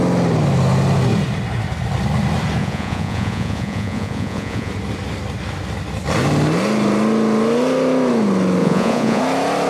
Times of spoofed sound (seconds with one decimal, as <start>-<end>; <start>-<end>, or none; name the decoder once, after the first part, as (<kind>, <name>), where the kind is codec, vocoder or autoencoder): 2.6-4.7 (vocoder, Vocos); 8.6-9.2